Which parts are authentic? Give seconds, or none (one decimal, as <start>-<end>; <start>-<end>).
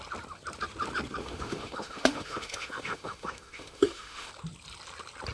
0.0-1.2; 4.3-5.3